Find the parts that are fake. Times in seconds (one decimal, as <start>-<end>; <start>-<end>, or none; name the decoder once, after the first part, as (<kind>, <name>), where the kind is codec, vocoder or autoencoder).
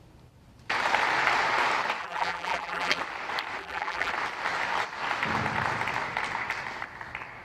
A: 2.0-3.0 (vocoder, BigVGAN v2); 3.6-4.1